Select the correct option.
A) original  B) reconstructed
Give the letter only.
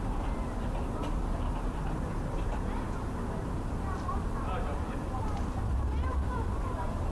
B